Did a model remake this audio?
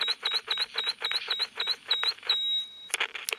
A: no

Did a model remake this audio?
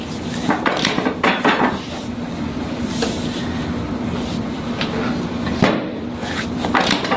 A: no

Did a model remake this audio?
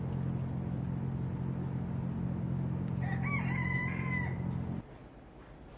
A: no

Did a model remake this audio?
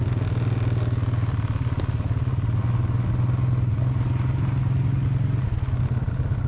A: no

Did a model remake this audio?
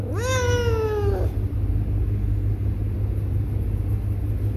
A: no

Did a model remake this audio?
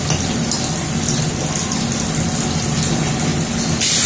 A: no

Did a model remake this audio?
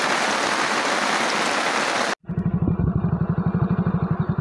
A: no